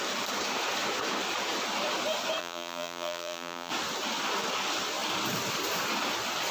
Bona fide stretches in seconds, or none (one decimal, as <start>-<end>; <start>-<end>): 0.0-2.4; 3.7-6.5